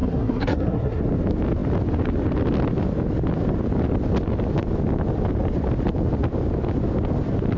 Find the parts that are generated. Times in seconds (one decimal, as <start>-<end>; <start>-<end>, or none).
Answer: 0.0-1.0